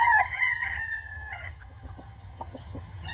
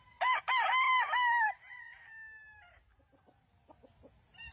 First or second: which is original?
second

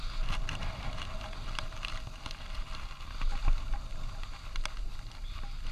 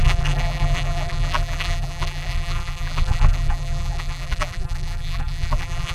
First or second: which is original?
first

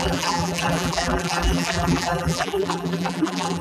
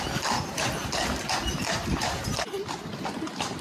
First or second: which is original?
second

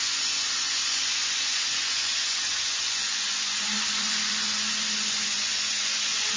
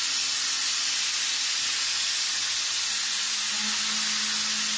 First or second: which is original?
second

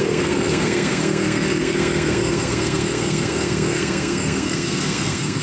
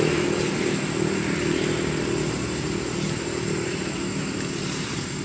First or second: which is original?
second